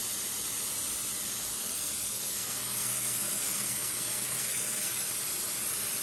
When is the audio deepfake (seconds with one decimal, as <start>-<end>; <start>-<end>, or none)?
1.5-5.1